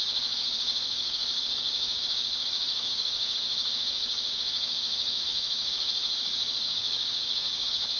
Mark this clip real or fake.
fake